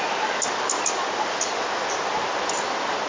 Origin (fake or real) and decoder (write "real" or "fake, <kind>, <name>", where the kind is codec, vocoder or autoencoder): real